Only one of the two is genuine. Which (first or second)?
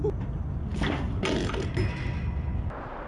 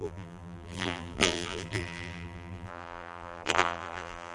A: first